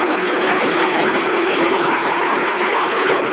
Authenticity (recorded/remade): remade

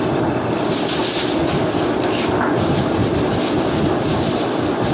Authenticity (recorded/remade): recorded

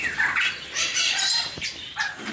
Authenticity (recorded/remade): remade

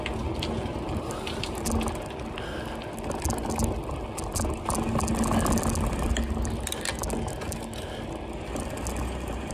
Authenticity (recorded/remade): recorded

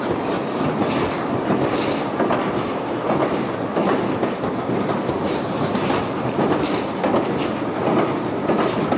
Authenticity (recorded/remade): recorded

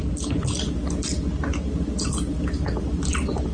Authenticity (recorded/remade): recorded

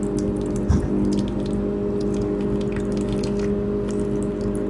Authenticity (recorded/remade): recorded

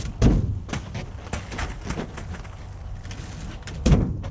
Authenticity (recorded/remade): recorded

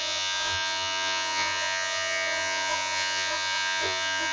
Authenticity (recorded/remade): remade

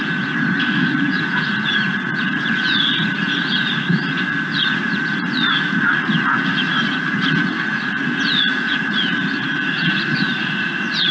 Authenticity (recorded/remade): remade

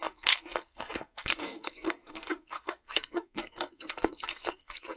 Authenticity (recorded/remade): remade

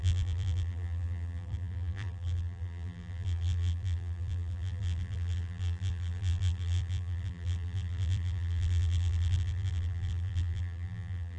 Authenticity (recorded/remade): remade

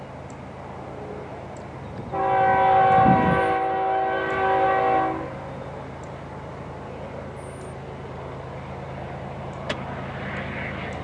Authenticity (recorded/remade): recorded